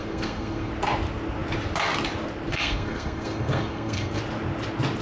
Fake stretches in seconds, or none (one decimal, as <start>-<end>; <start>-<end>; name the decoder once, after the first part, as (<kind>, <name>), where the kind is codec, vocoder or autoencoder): 0.0-0.7 (codec, SNAC); 2.5-4.2